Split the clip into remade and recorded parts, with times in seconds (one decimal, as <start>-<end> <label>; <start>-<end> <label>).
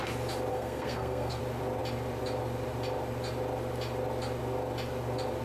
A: 0.0-0.5 recorded; 0.5-1.4 remade; 1.4-5.4 recorded